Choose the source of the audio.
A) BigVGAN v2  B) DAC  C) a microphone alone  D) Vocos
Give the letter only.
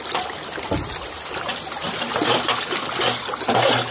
A